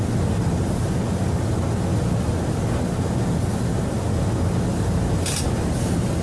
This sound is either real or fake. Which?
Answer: real